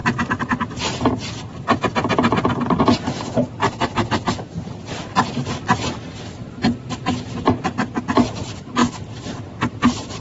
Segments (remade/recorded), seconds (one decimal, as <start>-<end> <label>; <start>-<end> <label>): 0.0-5.1 recorded; 5.1-7.0 remade; 7.0-8.8 recorded; 8.8-9.5 remade; 9.5-10.2 recorded